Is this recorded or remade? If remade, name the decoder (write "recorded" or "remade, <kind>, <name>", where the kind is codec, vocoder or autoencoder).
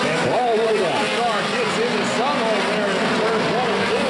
recorded